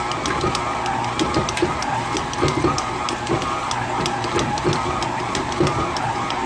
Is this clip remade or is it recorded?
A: recorded